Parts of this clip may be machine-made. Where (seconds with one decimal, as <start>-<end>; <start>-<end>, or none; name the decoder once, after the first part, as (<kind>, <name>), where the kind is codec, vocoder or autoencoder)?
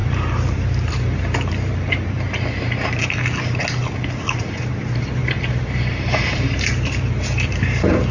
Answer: 0.0-3.0 (vocoder, BigVGAN v2); 4.4-8.1